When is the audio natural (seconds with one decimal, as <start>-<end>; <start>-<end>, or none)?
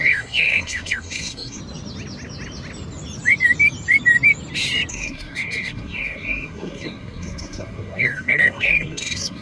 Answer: 1.6-4.9